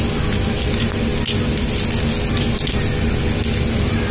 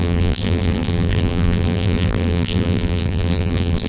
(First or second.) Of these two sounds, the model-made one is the second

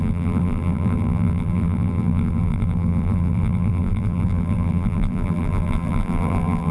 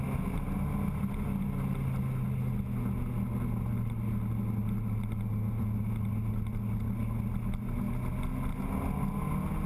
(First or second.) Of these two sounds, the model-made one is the first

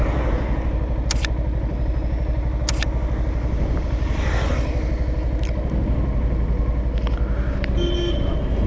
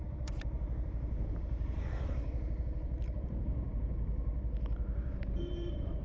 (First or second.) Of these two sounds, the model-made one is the second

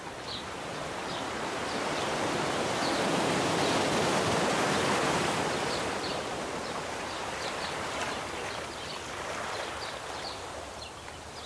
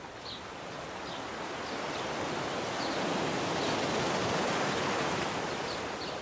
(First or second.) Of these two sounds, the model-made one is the first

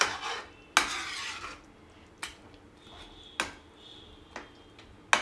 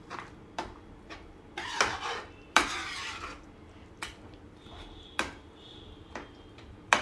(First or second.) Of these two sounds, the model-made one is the second